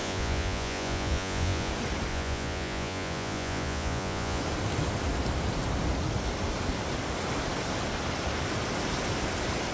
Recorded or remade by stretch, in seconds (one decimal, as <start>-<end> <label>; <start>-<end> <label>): 0.0-1.7 remade; 1.7-2.1 recorded; 2.1-4.4 remade; 4.4-9.7 recorded